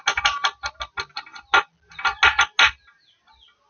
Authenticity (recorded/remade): recorded